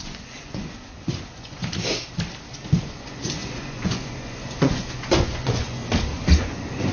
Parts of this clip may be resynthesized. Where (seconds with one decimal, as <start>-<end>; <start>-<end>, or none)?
0.0-1.8; 2.8-5.8; 6.4-6.9